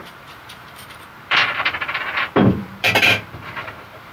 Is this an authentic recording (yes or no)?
no